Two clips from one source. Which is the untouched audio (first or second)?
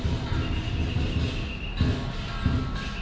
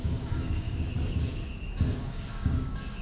first